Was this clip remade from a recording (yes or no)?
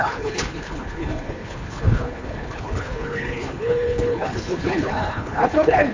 yes